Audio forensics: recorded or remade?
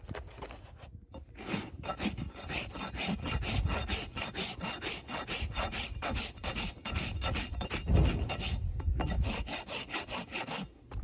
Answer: recorded